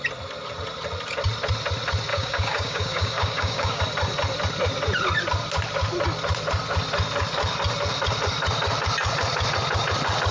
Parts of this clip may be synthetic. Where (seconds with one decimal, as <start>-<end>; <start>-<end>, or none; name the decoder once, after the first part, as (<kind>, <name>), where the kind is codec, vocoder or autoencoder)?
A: 2.1-3.8 (codec, DAC)